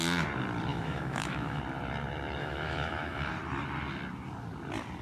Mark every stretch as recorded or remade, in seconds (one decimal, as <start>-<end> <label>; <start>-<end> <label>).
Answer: 0.0-0.7 recorded; 0.7-1.6 remade; 1.6-2.4 recorded; 2.4-3.3 remade; 3.3-5.0 recorded